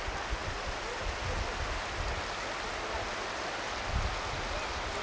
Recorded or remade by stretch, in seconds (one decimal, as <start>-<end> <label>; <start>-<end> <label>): 0.0-5.0 recorded